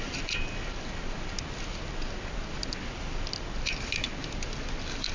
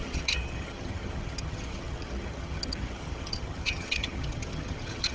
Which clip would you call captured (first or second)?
first